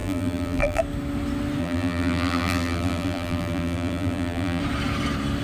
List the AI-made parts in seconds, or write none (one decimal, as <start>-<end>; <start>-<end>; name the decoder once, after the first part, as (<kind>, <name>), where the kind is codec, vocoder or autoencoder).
0.0-0.8 (vocoder, BigVGAN v2); 1.6-4.6